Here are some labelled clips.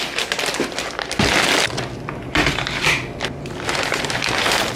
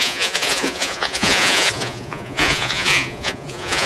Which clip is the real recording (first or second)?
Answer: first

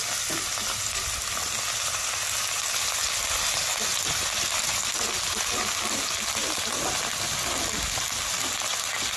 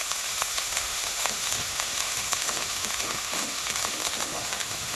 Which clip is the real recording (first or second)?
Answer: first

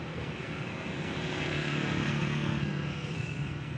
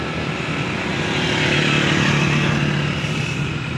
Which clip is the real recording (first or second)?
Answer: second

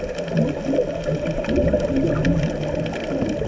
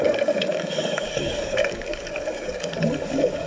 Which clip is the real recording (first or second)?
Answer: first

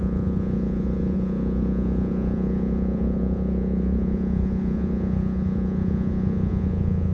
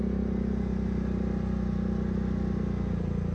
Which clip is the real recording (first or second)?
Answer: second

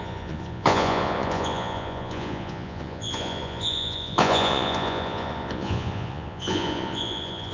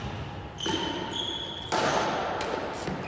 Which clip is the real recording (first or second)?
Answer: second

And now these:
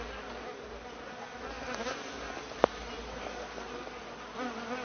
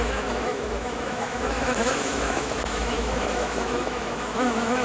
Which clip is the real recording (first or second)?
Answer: first